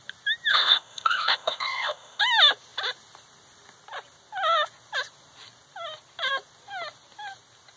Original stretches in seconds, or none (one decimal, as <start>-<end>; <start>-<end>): 0.0-0.5; 2.2-7.8